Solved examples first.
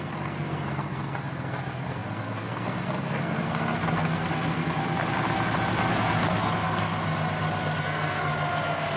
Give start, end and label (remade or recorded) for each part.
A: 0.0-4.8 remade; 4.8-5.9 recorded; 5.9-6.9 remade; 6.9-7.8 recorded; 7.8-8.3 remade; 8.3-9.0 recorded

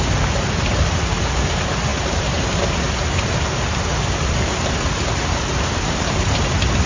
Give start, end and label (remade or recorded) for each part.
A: 0.0-6.9 recorded